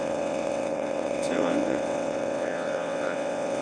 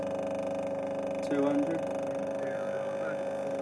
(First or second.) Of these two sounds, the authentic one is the second